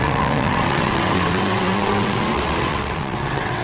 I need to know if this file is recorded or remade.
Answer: remade